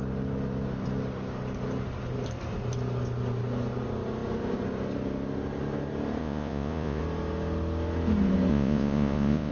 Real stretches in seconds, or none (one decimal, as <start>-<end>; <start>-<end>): 0.0-6.2; 7.0-8.5